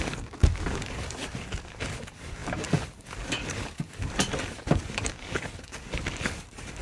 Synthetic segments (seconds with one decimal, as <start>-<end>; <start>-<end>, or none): 0.0-6.8